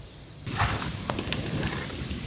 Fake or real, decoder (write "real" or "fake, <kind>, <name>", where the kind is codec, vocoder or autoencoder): real